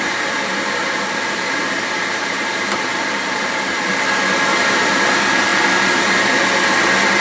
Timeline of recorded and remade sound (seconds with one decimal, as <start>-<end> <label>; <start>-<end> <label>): 0.0-0.8 recorded; 0.8-3.9 remade; 3.9-7.2 recorded